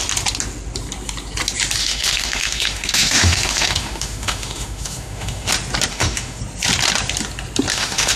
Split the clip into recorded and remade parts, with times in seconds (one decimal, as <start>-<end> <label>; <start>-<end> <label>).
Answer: 0.0-1.8 recorded; 1.8-5.5 remade; 5.5-5.9 recorded; 5.9-6.4 remade; 6.4-7.7 recorded; 7.7-8.2 remade